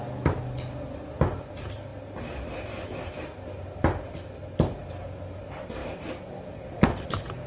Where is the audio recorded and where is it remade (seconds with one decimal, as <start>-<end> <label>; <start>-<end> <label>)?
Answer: 0.0-7.5 recorded